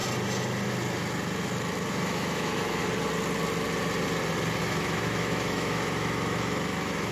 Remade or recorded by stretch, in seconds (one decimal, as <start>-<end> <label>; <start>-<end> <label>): 0.0-1.9 recorded; 1.9-2.8 remade; 2.8-4.6 recorded; 4.6-7.1 remade